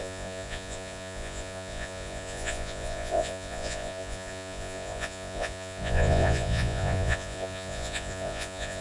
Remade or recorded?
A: remade